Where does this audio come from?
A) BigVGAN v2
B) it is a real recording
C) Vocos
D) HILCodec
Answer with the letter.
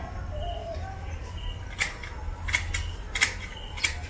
B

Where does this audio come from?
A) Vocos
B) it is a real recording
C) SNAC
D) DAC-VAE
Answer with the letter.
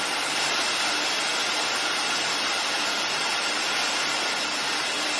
B